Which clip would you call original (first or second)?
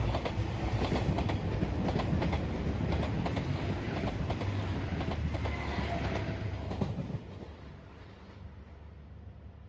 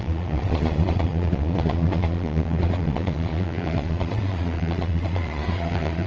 first